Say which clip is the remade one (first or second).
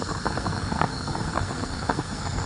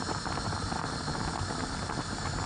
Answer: first